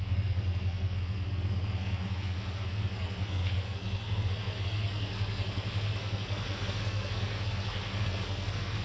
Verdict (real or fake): fake